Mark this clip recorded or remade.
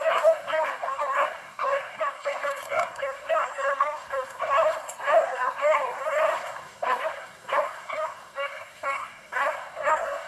remade